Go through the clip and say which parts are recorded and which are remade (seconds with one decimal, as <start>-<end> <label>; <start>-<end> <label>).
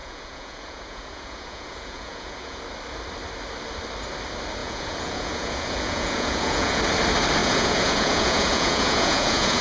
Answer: 0.0-2.6 remade; 2.6-4.6 recorded; 4.6-6.8 remade; 6.8-7.4 recorded; 7.4-9.6 remade